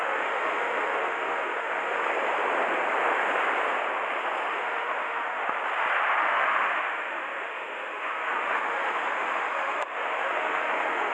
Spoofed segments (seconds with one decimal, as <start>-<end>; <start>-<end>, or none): 0.0-2.0; 4.5-5.4; 6.2-11.1